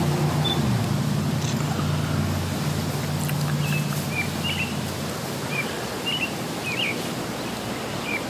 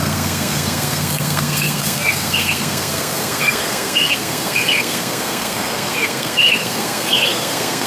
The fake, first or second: second